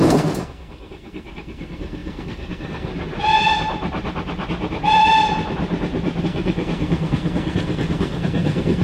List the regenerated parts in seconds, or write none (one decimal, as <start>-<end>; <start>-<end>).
0.0-2.9; 6.2-8.8

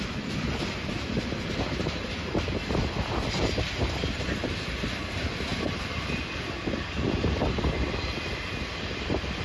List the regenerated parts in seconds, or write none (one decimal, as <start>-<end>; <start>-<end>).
5.5-6.2

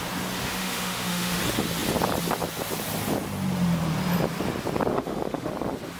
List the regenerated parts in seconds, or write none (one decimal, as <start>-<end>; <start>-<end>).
0.4-1.4; 4.9-5.5

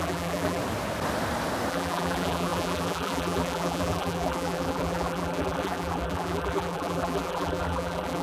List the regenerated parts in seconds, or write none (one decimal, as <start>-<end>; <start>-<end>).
0.0-0.6; 1.7-8.2

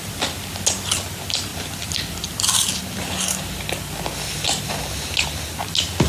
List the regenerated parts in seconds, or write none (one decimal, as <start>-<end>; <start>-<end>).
none